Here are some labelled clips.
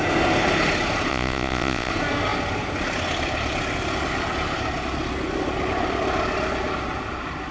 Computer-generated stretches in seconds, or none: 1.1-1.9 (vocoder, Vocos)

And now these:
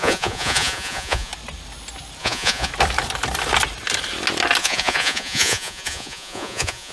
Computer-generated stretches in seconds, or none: 0.0-1.3 (vocoder, Vocos); 2.2-2.7; 4.6-6.9

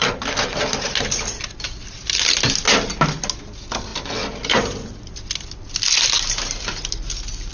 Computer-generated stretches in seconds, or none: none